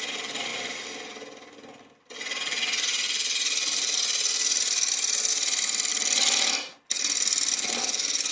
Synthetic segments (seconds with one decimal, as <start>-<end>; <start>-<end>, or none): none